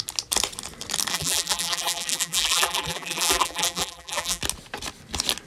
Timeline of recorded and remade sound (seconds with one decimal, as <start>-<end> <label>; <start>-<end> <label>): 0.0-1.1 recorded; 1.1-4.4 remade; 4.4-5.5 recorded